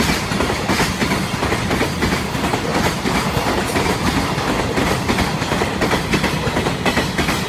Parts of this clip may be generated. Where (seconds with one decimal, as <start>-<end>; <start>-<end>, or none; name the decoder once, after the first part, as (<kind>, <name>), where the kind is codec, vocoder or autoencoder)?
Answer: none